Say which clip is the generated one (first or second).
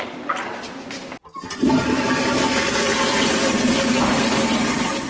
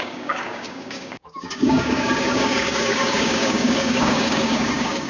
second